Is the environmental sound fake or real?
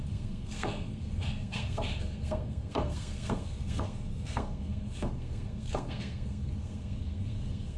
fake